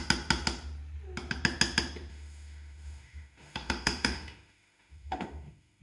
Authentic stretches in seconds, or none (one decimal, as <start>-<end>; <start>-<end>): 0.0-2.1